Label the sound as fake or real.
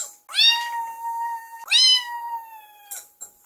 real